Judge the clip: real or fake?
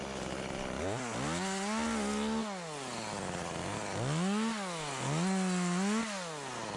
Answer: real